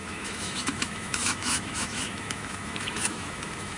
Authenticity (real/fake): fake